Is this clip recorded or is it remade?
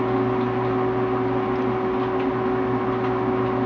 recorded